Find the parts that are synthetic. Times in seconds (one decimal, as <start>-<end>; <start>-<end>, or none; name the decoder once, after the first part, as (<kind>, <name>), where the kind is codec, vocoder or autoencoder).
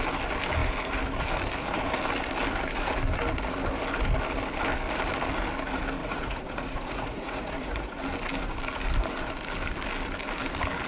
6.0-8.0 (vocoder, Vocos)